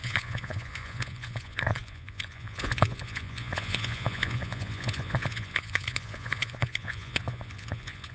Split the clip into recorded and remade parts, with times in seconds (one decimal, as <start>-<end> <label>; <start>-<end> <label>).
0.0-8.1 remade